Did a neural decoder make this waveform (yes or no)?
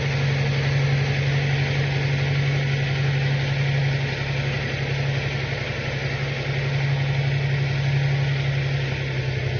no